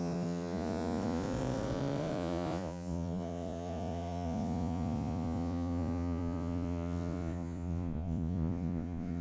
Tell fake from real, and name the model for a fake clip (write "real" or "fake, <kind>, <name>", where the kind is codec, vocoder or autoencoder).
fake, vocoder, Vocos